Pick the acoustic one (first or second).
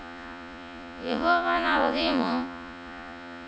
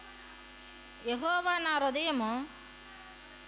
second